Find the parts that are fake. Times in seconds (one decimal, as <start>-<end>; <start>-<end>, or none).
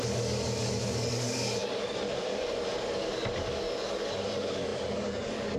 0.0-5.6